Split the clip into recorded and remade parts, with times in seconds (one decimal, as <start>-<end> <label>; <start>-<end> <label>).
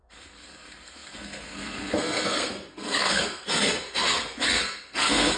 0.0-5.4 remade